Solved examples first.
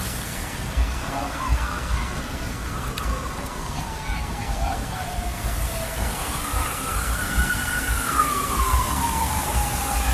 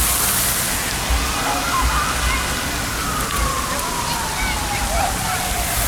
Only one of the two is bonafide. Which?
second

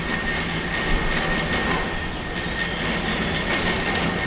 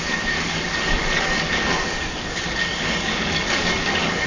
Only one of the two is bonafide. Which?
first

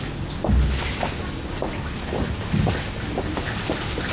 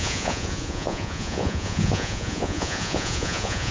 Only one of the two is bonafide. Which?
first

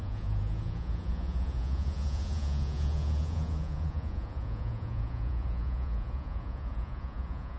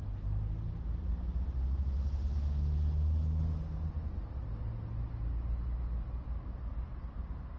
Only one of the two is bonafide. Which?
second